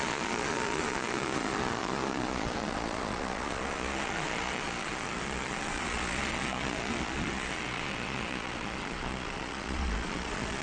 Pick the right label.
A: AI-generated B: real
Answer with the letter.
A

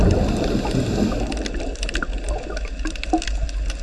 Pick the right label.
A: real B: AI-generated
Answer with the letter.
A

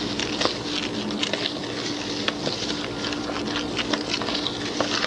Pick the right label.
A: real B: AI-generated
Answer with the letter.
A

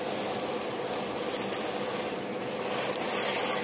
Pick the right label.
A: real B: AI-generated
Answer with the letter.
A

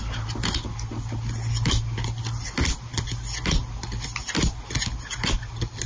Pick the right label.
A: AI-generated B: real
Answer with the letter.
B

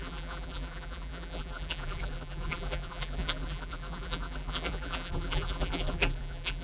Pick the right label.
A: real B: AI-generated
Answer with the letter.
B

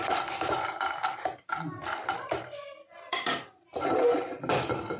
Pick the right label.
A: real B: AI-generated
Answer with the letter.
B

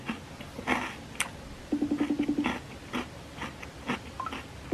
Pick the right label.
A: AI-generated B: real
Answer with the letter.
B